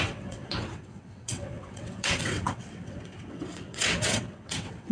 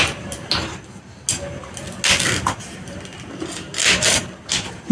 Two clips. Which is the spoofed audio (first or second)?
first